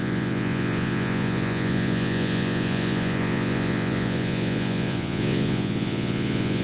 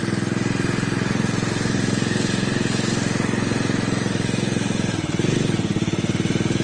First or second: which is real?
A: second